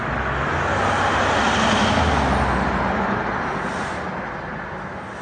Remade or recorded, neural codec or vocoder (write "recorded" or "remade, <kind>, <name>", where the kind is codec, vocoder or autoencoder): recorded